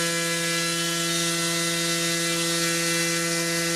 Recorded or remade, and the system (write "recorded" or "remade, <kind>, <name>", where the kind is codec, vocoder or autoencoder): recorded